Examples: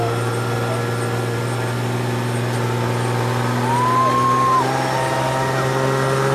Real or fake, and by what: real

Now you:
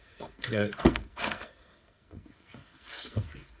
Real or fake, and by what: fake, codec, SNAC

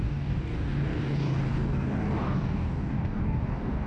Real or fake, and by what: fake, codec, DAC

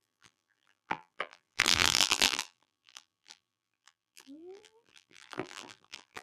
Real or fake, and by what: fake, vocoder, BigVGAN v2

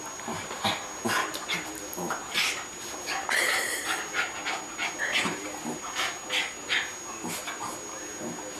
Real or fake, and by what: real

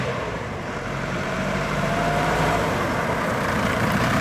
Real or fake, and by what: fake, vocoder, BigVGAN v2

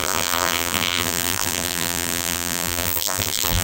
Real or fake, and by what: fake, vocoder, BigVGAN v2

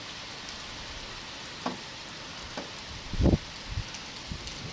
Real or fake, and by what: real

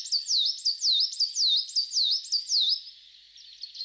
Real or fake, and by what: real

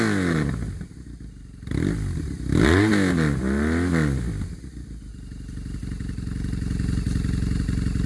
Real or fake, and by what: real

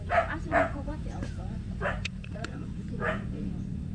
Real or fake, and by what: fake, vocoder, Vocos